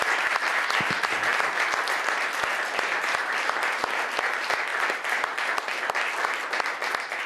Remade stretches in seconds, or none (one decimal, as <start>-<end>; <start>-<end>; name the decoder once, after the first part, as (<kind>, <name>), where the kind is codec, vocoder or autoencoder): none